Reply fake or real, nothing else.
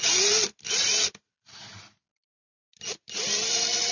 real